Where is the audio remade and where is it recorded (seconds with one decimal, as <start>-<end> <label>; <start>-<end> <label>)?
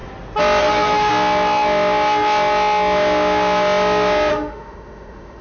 0.0-0.6 recorded; 0.6-1.1 remade; 1.1-4.3 recorded; 4.3-5.4 remade